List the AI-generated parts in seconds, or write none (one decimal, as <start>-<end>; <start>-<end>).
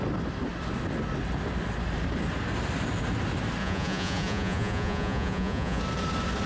3.6-5.8